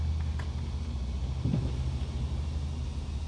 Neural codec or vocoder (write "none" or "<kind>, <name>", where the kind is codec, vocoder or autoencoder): none